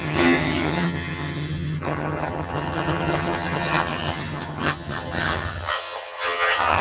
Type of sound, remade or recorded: remade